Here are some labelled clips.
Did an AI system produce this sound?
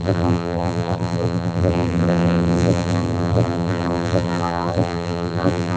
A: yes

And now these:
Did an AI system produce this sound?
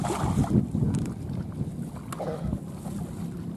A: no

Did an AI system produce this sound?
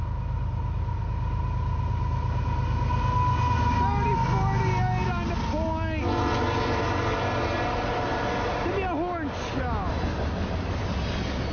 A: no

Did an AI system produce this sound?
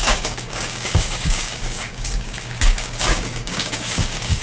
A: yes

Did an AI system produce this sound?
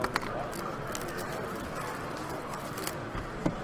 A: no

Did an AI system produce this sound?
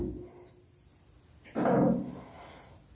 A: no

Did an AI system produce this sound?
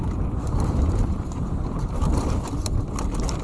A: no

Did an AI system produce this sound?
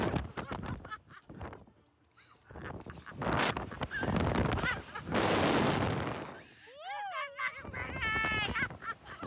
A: no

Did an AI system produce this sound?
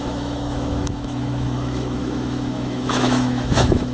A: yes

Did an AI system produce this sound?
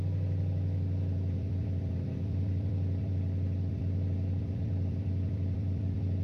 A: yes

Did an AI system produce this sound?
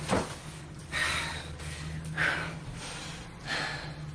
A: no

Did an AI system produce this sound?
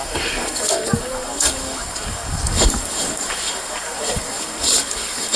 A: yes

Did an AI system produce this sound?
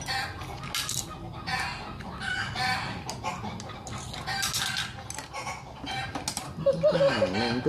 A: no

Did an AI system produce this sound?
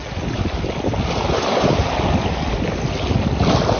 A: no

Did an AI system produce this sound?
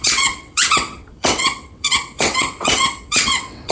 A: yes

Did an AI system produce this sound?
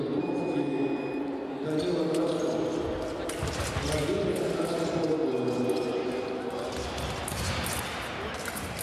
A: no